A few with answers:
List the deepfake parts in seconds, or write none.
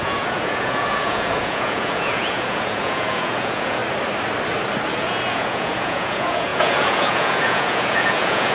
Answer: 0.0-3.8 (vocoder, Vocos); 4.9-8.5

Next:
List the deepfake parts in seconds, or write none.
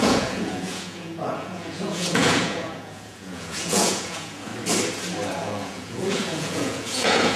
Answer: 0.0-4.5 (vocoder, Vocos); 5.3-7.4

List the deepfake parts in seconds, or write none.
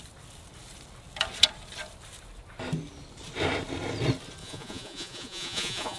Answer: 4.4-6.0 (vocoder, Vocos)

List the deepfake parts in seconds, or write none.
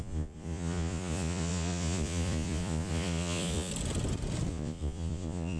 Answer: 0.0-3.7 (vocoder, Vocos); 4.5-5.6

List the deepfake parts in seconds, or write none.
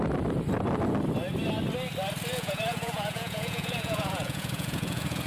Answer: 2.3-5.3 (vocoder, Vocos)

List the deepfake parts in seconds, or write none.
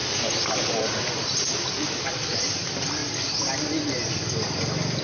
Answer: none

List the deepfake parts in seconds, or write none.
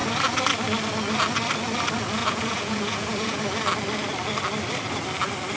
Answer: 2.2-3.4 (vocoder, Vocos)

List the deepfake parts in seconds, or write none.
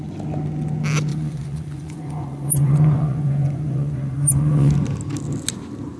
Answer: 1.1-4.7 (vocoder, Vocos)